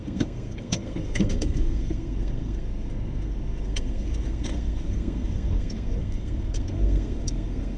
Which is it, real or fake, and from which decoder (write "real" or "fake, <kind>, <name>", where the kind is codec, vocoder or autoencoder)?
fake, codec, SNAC